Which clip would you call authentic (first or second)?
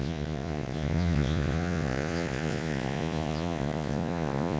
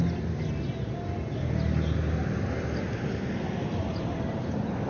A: second